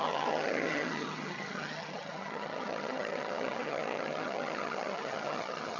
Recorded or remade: remade